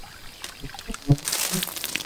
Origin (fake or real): real